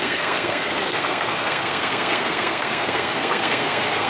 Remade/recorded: remade